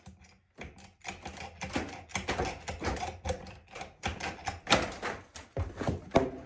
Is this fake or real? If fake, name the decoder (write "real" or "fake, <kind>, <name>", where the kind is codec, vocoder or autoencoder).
real